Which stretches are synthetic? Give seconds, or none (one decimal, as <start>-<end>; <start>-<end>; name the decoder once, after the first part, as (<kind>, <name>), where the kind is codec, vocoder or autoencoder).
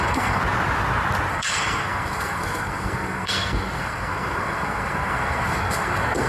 0.0-0.4 (codec, SNAC); 1.3-6.3